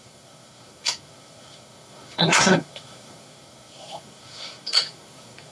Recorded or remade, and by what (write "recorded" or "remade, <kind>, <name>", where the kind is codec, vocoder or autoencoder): remade, codec, SNAC